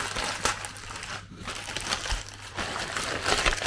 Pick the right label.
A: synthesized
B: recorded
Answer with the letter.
B